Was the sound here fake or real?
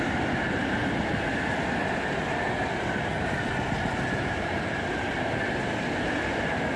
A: real